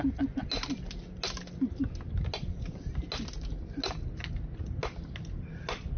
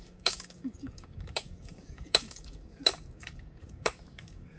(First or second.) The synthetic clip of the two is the second